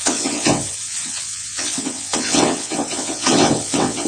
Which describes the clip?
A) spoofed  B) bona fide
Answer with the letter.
A